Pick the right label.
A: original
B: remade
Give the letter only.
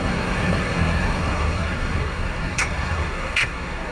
B